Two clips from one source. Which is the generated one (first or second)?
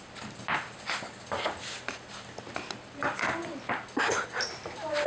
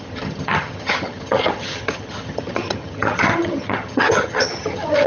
second